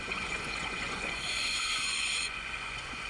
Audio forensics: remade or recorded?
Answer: remade